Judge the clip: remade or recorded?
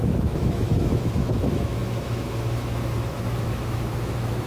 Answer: remade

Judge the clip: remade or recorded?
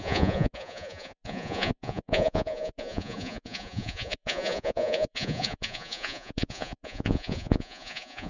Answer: remade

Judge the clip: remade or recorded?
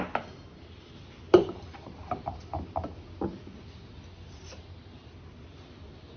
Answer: recorded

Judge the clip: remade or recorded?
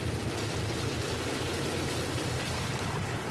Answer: recorded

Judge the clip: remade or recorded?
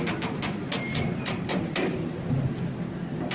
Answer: recorded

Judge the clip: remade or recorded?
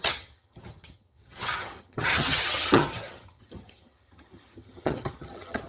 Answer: remade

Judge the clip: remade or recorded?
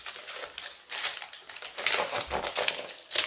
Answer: recorded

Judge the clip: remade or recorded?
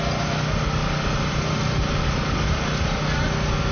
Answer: recorded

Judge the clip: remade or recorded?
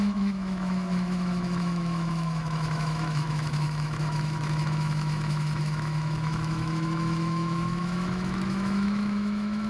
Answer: remade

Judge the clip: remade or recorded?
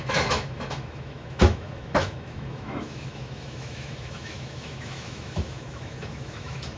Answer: remade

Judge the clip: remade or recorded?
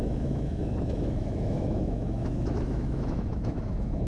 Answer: remade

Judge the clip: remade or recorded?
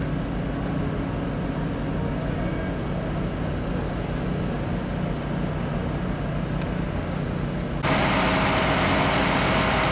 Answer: recorded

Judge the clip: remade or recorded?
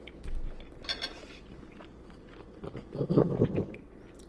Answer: recorded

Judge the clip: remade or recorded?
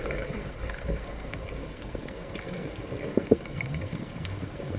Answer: remade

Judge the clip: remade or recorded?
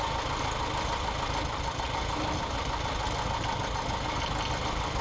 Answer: recorded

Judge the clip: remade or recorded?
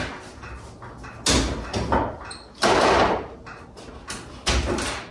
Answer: recorded